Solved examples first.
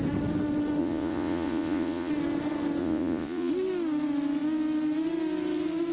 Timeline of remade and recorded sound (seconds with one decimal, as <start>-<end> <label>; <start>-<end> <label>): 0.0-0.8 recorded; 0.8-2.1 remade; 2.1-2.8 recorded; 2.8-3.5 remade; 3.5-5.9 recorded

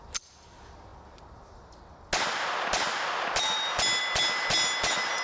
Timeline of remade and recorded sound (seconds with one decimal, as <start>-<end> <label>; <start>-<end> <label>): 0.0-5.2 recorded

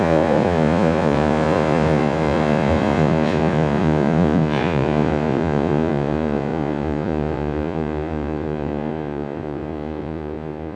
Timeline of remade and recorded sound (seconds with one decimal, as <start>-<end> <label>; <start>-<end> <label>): 0.0-10.8 remade

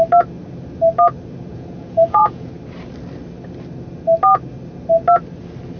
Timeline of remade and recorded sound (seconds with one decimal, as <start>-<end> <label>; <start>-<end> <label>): 0.0-1.5 recorded; 1.5-2.5 remade; 2.5-5.8 recorded

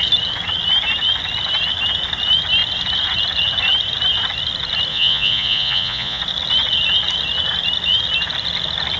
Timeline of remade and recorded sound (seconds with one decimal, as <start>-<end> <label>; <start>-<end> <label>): 0.0-4.9 recorded; 4.9-6.2 remade; 6.2-9.0 recorded

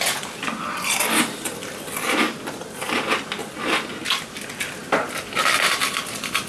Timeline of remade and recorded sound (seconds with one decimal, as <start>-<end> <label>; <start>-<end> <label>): 0.0-6.5 recorded

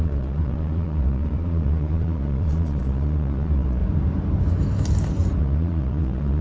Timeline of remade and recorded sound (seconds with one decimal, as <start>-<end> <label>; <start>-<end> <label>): 0.0-3.8 remade; 3.8-5.4 recorded; 5.4-6.4 remade

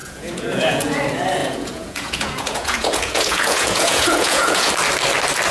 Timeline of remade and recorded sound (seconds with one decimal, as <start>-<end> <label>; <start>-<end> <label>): 0.0-1.0 remade; 1.0-1.4 recorded; 1.4-4.7 remade; 4.7-5.5 recorded